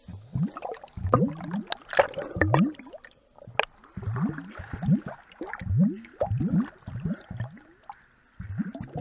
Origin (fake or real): real